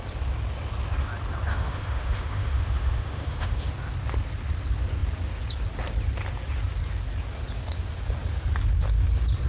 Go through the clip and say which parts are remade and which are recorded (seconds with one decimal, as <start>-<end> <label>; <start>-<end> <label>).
0.0-1.5 recorded; 1.5-3.7 remade; 3.7-9.5 recorded